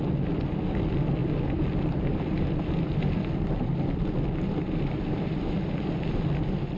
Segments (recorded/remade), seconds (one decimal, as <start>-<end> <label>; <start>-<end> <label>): 0.0-6.8 recorded